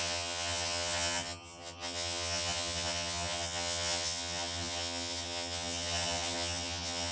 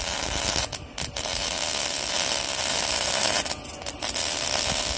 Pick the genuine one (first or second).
second